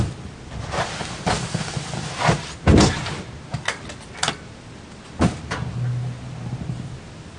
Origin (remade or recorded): recorded